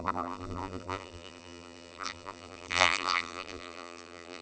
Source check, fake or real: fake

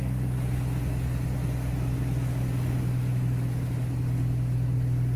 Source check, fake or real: real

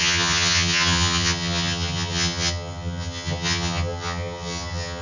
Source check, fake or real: fake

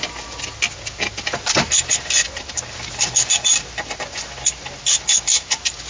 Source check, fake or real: real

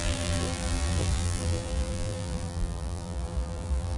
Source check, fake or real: fake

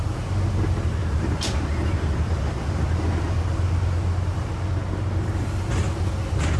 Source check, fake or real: real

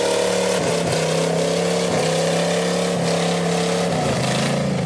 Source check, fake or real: real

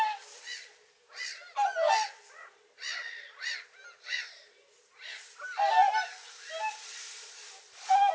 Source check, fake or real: real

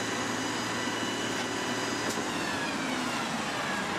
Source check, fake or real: real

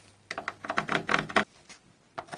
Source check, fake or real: real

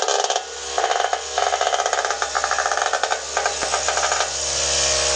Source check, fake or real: real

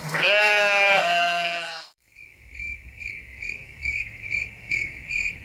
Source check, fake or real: fake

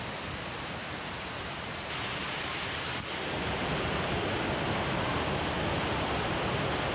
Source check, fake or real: real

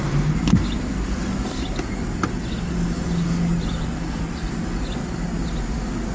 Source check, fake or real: real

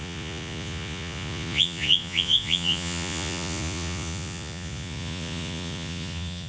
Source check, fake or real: fake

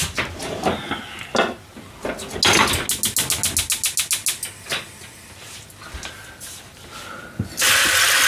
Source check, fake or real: real